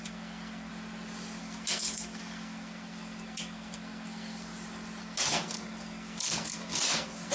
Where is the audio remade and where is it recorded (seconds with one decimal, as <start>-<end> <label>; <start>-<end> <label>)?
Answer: 0.0-0.7 remade; 0.7-1.4 recorded; 1.4-4.5 remade; 4.5-5.0 recorded; 5.0-7.3 remade